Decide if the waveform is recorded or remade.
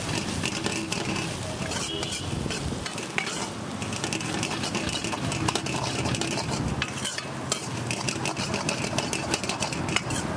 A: recorded